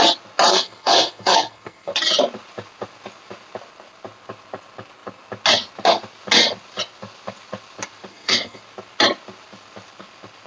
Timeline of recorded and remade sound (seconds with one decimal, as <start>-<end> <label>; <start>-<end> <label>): 0.0-0.5 recorded; 0.5-1.9 remade; 1.9-8.1 recorded; 8.1-8.6 remade; 8.6-10.5 recorded